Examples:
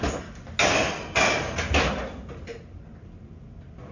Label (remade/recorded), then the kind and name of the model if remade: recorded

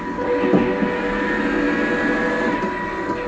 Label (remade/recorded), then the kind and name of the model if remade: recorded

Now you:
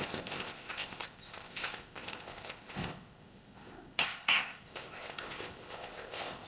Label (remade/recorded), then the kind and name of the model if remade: remade, codec, ZipCodec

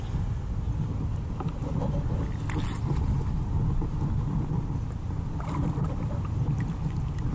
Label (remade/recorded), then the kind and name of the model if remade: recorded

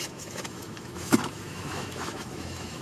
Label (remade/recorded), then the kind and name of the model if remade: remade, autoencoder, DAC-VAE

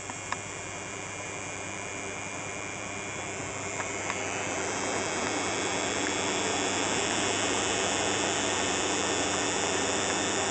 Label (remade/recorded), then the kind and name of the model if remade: remade, vocoder, BigVGAN v2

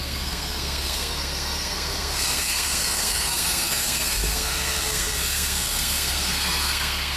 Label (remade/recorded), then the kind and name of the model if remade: remade, codec, SNAC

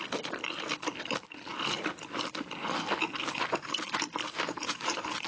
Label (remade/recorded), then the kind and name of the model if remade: recorded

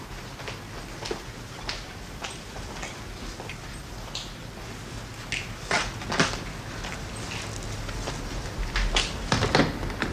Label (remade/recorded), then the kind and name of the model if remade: recorded